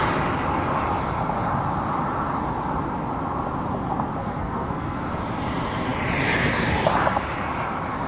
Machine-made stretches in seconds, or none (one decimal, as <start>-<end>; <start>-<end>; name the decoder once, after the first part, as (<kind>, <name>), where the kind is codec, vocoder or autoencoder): 4.2-5.2 (codec, SNAC)